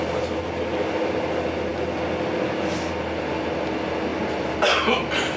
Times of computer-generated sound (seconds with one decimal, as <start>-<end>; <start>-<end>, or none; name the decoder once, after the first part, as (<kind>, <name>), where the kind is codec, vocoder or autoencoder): none